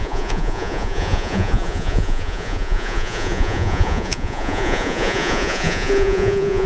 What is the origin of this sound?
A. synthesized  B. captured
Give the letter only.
A